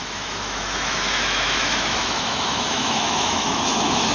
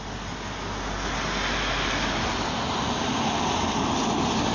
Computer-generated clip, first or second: first